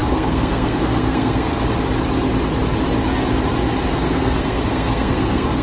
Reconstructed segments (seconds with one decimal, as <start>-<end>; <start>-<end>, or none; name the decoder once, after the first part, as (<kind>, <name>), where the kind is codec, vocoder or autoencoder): 0.0-1.5 (codec, SNAC); 3.9-5.6